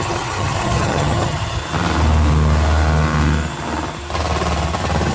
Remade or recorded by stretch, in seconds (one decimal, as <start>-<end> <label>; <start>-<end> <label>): 0.0-1.6 remade; 1.6-5.1 recorded